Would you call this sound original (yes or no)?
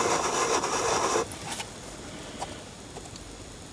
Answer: yes